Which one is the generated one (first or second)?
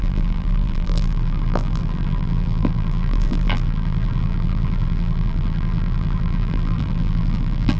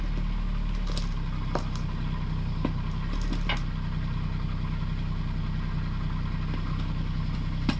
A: first